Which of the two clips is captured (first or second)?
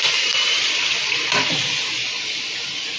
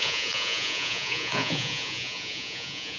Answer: first